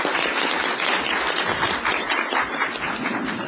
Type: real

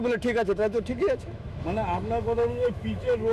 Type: fake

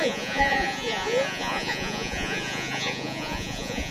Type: fake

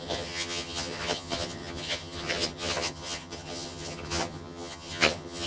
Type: fake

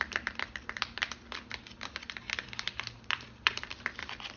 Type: fake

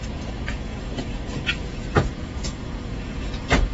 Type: fake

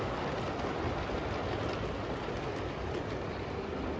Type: real